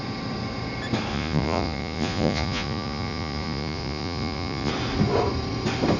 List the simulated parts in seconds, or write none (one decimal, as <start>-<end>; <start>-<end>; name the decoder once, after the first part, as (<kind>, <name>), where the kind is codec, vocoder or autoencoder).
1.1-4.7 (vocoder, Vocos)